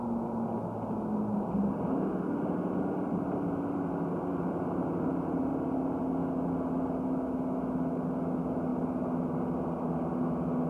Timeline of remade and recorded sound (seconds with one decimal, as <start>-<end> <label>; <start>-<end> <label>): 0.0-10.7 recorded